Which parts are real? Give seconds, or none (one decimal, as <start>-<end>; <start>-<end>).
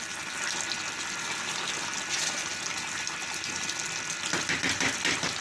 0.0-5.4